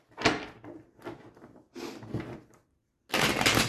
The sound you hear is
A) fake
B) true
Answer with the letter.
B